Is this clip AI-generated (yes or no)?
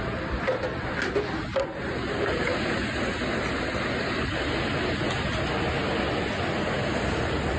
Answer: no